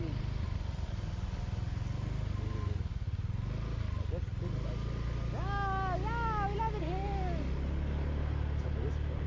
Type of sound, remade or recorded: recorded